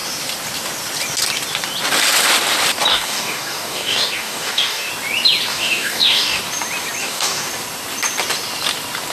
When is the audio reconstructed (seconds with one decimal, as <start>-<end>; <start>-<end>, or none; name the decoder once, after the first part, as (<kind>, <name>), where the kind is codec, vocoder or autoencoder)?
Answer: 2.9-4.9 (codec, DAC); 5.5-6.4; 7.0-7.5